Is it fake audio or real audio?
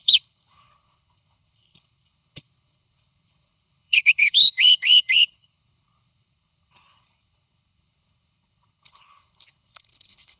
fake